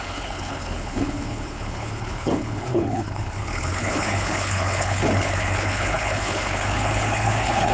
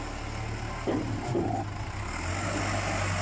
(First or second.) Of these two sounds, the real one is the second